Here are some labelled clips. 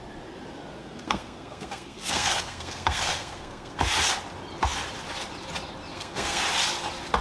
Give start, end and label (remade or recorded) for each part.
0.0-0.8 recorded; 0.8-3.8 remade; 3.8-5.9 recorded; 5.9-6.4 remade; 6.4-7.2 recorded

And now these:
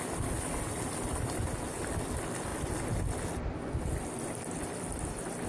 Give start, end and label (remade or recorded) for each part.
0.0-5.5 recorded

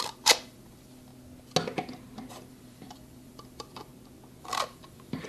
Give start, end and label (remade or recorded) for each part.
0.0-1.1 remade; 1.1-2.3 recorded; 2.3-3.9 remade; 3.9-4.4 recorded; 4.4-5.3 remade

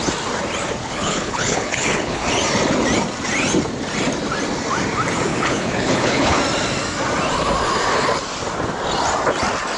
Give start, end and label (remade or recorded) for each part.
0.0-0.8 recorded; 0.8-2.3 remade; 2.3-5.3 recorded; 5.3-6.4 remade; 6.4-9.8 recorded